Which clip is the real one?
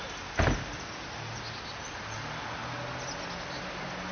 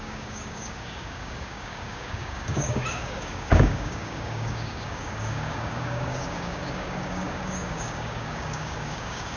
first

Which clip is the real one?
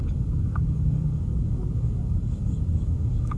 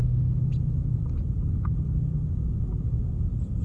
second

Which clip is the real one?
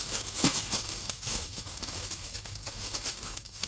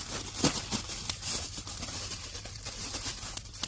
second